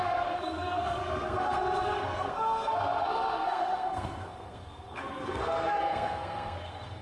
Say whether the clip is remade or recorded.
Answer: remade